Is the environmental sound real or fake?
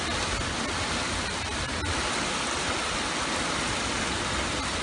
real